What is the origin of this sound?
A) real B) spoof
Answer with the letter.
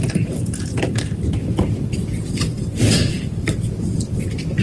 A